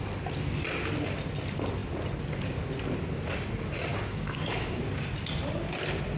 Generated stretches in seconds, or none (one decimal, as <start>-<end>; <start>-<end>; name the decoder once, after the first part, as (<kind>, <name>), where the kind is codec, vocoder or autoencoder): 3.9-4.8 (codec, DAC)